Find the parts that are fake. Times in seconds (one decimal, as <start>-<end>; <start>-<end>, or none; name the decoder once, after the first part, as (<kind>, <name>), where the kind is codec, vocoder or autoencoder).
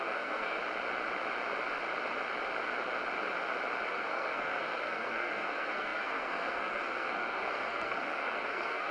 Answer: 0.0-0.6 (codec, SNAC); 3.9-8.9